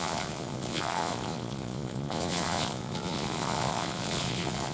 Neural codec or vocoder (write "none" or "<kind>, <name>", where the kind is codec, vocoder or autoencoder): vocoder, Vocos